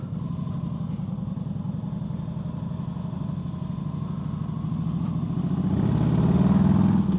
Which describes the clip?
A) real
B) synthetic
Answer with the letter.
A